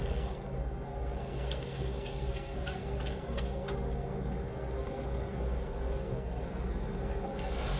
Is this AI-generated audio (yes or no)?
yes